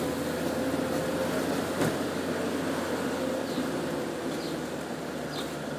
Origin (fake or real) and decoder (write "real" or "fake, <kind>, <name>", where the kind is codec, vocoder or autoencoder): real